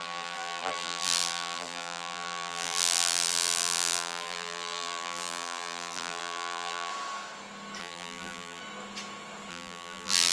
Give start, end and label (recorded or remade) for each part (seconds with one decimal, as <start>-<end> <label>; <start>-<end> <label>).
0.0-6.9 remade; 6.9-7.8 recorded; 7.8-8.6 remade; 8.6-9.5 recorded; 9.5-10.3 remade